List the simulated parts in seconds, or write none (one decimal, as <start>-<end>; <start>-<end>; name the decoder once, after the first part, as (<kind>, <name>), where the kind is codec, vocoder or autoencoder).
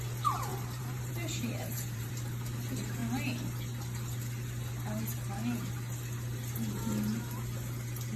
0.5-2.1 (vocoder, BigVGAN v2)